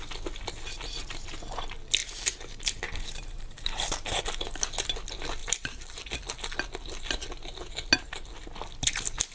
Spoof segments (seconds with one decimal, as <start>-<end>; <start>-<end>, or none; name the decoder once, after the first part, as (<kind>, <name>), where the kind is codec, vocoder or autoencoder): 2.0-4.2 (vocoder, BigVGAN v2); 5.4-6.0